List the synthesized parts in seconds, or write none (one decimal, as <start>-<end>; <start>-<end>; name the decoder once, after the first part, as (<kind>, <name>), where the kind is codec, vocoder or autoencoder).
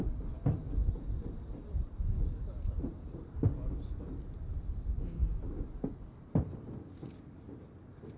0.8-3.5 (vocoder, BigVGAN v2)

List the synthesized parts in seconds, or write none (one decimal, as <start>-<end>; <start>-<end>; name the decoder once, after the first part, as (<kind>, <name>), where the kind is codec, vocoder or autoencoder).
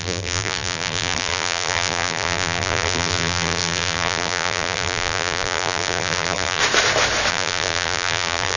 0.0-6.6 (vocoder, BigVGAN v2); 7.3-8.6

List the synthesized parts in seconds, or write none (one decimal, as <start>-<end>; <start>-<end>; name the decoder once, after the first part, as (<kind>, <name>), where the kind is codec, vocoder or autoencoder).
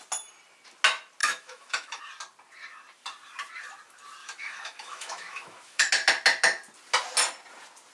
1.2-2.0 (autoencoder, DAC-VAE); 4.2-5.9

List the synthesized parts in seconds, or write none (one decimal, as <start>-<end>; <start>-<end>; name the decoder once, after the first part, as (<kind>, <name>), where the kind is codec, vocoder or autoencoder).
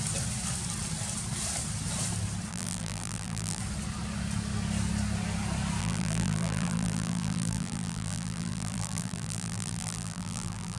2.5-3.6 (vocoder, BigVGAN v2); 5.8-10.8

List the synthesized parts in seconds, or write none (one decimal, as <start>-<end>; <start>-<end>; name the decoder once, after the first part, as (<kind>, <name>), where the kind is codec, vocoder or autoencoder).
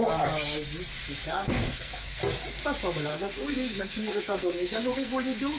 1.3-2.2 (codec, SNAC); 3.1-5.6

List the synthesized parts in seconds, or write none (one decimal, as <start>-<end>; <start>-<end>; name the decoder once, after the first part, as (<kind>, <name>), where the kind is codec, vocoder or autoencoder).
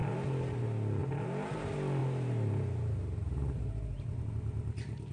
2.0-4.3 (vocoder, BigVGAN v2)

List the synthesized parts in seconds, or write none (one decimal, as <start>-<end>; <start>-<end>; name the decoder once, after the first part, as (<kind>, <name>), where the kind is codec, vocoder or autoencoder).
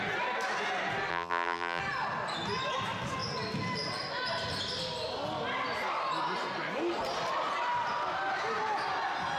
1.1-1.8 (vocoder, BigVGAN v2)